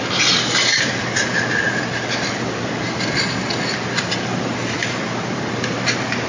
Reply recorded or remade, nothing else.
recorded